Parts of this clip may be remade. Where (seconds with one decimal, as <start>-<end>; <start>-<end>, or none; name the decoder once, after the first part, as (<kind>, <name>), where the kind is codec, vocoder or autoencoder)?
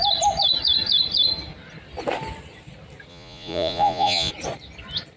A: 3.1-4.3 (vocoder, Vocos)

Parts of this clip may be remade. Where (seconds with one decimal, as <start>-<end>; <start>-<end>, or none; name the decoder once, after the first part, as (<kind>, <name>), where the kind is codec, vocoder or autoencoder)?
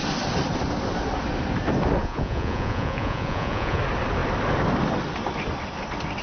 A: 2.0-3.8 (vocoder, Vocos)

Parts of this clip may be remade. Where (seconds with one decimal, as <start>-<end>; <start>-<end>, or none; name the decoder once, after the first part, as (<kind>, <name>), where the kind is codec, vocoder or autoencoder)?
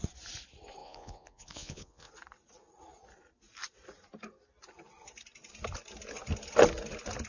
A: 0.8-2.1 (vocoder, Vocos)